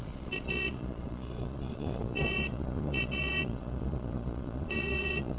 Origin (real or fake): fake